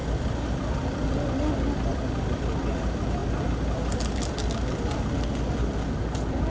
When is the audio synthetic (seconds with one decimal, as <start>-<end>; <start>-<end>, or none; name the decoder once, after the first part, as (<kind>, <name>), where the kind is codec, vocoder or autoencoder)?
none